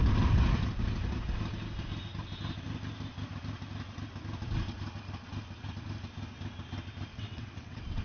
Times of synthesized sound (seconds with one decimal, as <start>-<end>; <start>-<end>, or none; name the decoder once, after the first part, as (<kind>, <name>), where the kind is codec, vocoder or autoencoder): 7.1-8.0 (vocoder, WaveNeXt)